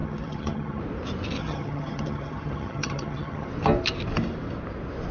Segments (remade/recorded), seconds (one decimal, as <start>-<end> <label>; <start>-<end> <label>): 0.0-0.8 remade; 0.8-1.4 recorded; 1.4-3.5 remade; 3.5-5.1 recorded